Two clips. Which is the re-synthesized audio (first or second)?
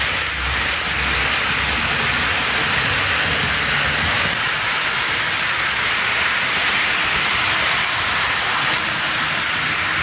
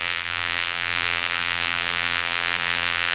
second